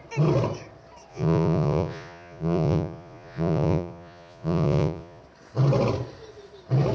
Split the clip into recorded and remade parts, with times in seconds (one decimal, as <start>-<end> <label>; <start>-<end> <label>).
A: 0.0-1.1 recorded; 1.1-5.2 remade; 5.2-6.9 recorded